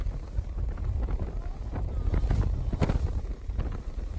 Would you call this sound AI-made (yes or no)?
no